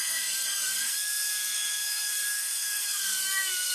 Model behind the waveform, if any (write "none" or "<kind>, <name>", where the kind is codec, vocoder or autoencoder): codec, SNAC